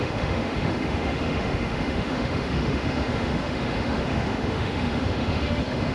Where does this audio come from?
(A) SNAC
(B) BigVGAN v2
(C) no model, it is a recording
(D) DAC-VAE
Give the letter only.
D